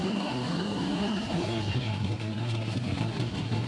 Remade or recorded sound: remade